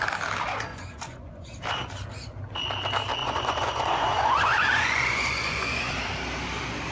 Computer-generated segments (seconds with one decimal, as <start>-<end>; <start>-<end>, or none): 0.7-1.5; 3.2-5.9